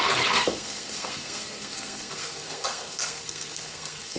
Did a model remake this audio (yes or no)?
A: yes